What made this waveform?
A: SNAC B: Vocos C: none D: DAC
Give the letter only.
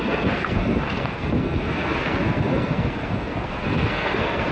A